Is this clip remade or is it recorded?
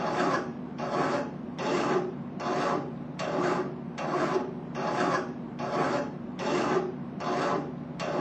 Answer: remade